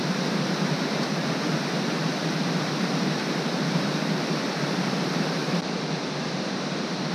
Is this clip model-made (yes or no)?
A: yes